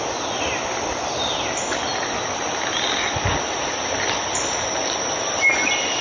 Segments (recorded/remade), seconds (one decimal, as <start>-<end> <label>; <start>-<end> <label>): 0.0-6.0 recorded